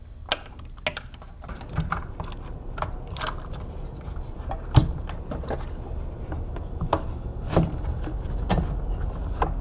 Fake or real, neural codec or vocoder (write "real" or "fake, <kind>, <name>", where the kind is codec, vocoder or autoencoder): real